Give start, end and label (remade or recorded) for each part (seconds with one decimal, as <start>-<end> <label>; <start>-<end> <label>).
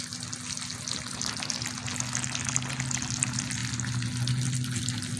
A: 0.0-5.2 recorded